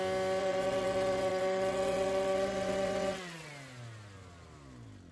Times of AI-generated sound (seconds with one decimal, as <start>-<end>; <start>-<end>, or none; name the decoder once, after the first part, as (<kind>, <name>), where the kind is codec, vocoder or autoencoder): 0.4-3.5 (vocoder, WaveNeXt)